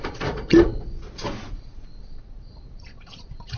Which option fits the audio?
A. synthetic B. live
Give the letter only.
A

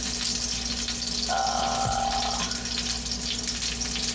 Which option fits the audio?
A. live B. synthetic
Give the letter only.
A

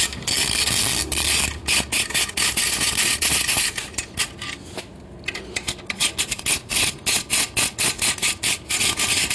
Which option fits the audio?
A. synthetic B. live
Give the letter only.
B